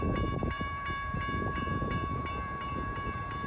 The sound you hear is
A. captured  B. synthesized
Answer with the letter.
B